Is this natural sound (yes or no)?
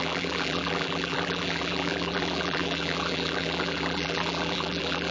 no